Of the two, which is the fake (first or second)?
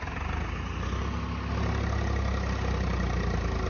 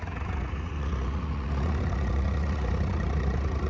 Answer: second